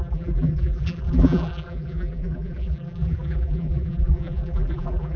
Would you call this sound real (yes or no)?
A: no